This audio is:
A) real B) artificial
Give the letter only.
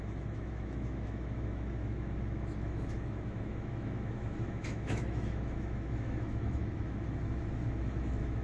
B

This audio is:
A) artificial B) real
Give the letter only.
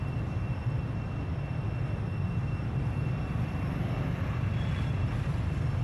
B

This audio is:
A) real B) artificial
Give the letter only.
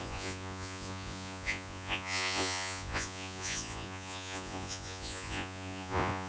B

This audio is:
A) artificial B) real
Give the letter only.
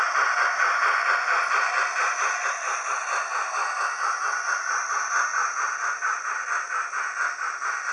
B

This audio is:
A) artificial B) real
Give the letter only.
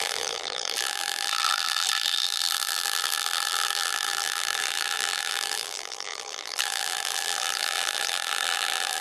A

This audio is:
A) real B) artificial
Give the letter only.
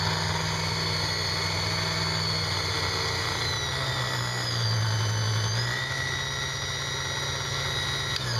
A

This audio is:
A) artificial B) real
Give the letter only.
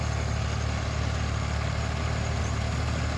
B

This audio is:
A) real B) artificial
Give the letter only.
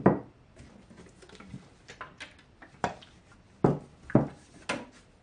A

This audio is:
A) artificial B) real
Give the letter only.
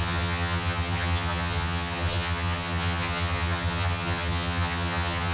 A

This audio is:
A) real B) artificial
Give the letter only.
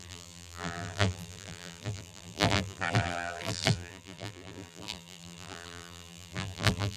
B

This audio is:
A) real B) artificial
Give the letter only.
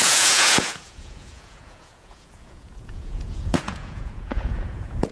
B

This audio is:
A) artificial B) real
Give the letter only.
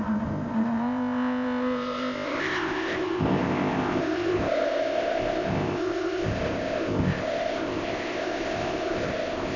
A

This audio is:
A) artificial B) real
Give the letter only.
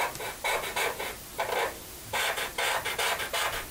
B